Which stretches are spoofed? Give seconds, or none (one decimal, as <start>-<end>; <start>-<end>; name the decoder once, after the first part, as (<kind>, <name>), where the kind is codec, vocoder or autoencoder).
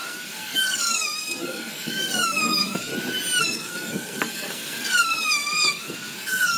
0.0-2.9 (codec, SNAC); 3.4-6.6